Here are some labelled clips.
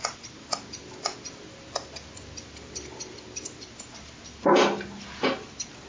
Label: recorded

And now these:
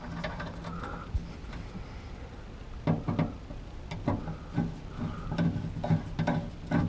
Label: recorded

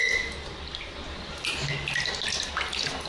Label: recorded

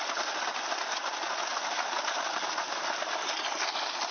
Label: recorded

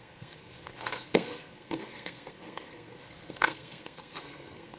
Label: remade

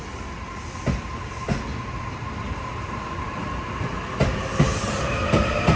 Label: recorded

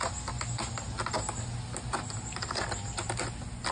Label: recorded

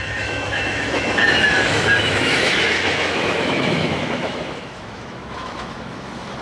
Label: remade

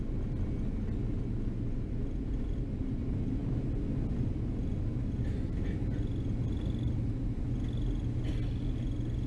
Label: recorded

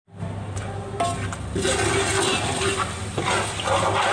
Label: recorded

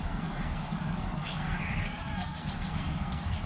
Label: remade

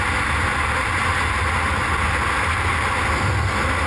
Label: recorded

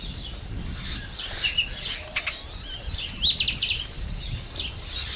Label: recorded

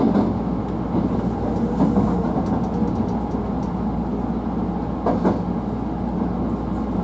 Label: recorded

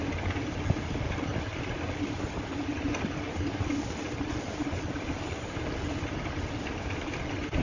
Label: recorded